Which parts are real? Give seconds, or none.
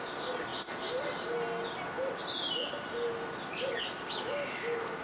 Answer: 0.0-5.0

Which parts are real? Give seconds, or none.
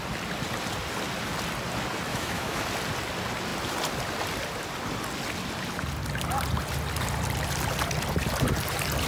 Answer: 0.0-2.1; 2.6-9.1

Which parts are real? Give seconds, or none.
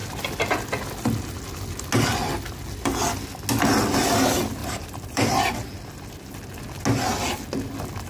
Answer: 0.0-4.6; 5.4-8.1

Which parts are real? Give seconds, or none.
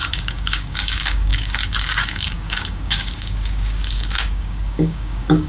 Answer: none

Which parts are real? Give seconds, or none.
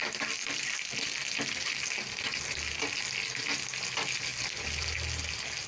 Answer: 0.0-5.7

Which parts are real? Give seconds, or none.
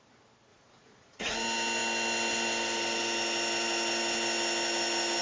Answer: 0.0-0.5; 1.3-5.2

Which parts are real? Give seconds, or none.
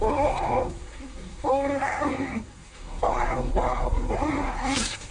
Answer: none